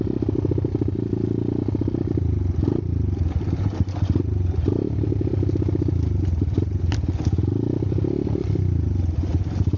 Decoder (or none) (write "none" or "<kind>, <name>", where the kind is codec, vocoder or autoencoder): none